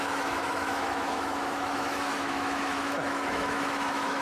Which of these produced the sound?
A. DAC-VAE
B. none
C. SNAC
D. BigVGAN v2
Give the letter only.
A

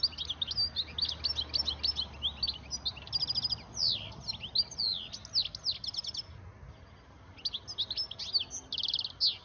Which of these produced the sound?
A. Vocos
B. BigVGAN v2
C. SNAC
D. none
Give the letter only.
D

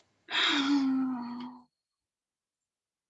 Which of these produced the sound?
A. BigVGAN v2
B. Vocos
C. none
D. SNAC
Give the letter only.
C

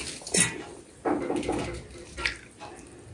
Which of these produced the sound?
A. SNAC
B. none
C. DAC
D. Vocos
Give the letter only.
B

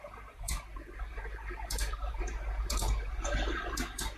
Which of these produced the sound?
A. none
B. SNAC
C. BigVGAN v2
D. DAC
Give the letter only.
C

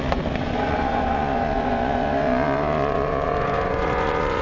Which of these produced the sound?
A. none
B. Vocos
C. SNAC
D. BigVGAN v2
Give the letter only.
B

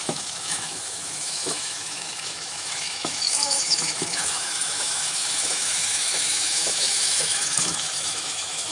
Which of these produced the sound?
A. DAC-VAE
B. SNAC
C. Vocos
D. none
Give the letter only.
A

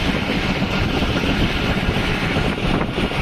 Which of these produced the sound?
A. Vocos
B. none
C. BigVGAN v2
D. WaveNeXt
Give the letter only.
B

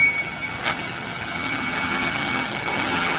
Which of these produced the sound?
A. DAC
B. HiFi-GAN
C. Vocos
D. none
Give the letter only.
B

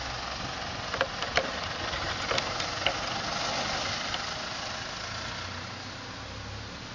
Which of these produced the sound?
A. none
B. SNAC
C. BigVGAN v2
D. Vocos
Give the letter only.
A